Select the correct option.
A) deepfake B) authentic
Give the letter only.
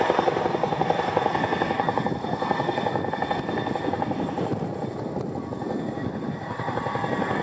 B